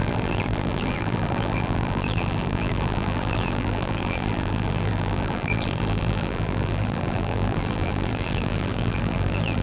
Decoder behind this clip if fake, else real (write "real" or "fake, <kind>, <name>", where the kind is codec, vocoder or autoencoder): fake, vocoder, BigVGAN v2